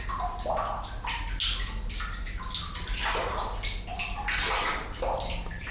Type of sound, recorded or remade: recorded